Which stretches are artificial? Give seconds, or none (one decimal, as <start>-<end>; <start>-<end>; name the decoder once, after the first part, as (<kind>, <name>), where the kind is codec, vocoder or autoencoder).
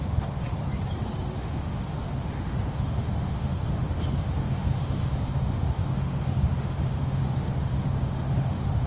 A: 0.0-0.5 (autoencoder, DAC-VAE); 1.4-8.9